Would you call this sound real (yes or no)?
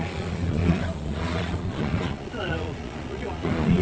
no